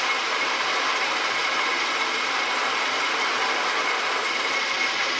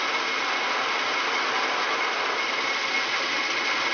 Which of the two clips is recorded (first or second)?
second